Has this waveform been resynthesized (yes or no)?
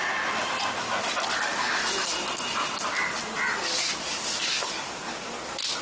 no